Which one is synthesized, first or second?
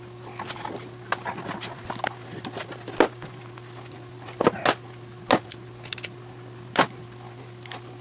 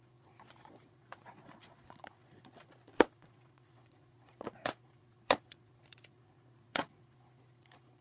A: second